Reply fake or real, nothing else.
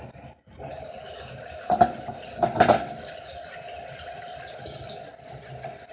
real